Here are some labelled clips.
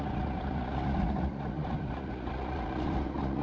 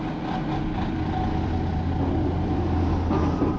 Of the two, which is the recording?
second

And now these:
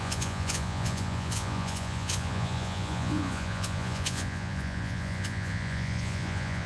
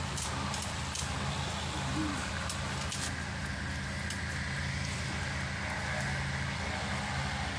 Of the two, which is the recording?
second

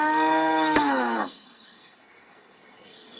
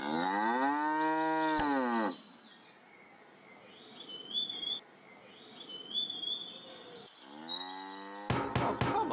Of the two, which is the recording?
second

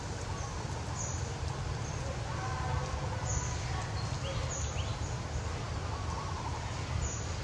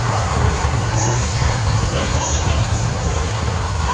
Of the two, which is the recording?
first